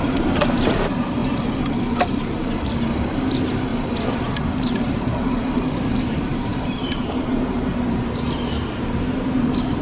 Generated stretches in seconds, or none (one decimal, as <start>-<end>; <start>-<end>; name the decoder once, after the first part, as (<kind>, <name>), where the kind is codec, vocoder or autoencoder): 0.0-1.2 (vocoder, BigVGAN v2); 2.0-3.7; 4.4-9.8